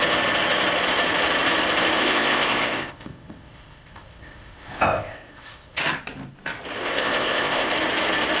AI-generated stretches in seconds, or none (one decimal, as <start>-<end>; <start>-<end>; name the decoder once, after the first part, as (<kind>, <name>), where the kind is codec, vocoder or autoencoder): 2.0-5.8 (codec, ZipCodec); 6.8-7.7